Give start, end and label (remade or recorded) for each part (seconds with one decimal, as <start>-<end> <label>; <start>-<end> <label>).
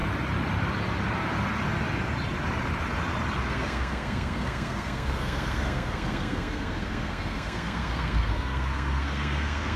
0.0-3.5 recorded; 3.5-9.8 remade